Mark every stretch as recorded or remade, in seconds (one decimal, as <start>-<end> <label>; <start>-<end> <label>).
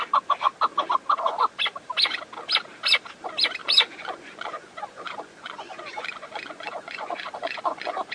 0.0-3.6 recorded; 3.6-8.1 remade